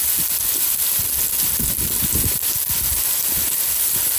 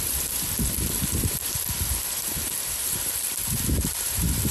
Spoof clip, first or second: second